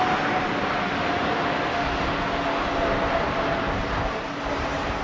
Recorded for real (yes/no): yes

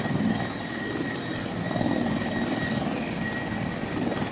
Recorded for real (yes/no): yes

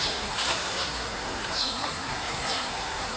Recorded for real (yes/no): no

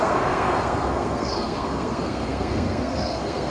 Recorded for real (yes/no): no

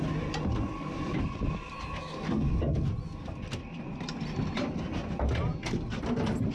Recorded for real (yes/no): yes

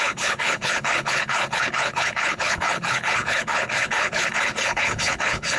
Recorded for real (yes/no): no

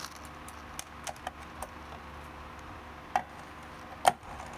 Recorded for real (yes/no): yes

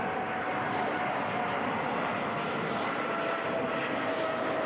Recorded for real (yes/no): yes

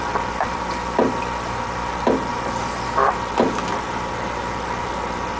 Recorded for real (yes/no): yes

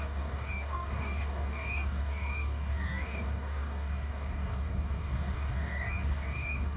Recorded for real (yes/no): no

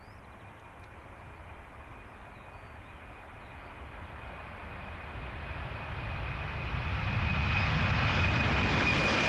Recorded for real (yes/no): yes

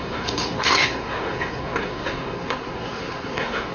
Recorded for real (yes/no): no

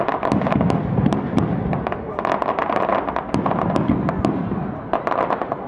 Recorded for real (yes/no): yes